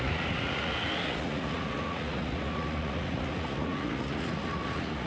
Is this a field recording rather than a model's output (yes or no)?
no